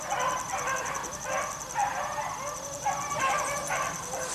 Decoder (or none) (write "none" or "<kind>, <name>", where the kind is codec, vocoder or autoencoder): none